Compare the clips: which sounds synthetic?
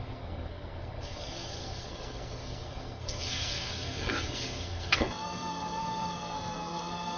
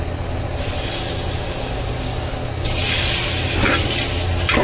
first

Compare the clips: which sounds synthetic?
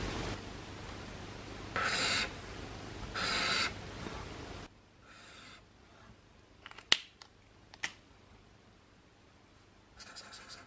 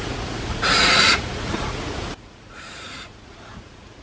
second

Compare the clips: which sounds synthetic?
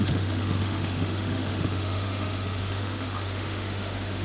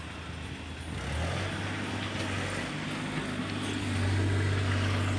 first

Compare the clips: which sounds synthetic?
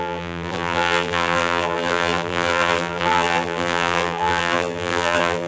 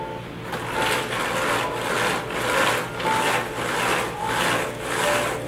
first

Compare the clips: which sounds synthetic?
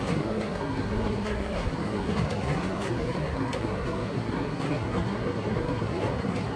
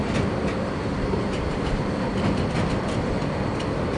first